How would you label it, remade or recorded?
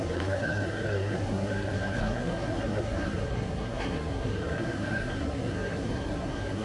remade